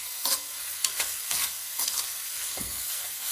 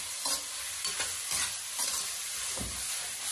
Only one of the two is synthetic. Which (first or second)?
first